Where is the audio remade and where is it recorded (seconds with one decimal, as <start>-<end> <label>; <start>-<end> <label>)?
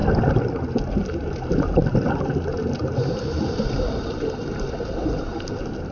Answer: 0.0-0.9 recorded; 0.9-1.7 remade; 1.7-3.4 recorded; 3.4-5.9 remade